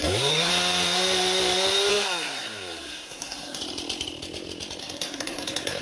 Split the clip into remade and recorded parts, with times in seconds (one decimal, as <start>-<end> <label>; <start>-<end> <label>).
0.0-0.5 remade; 0.5-1.9 recorded; 1.9-3.6 remade; 3.6-4.8 recorded; 4.8-5.8 remade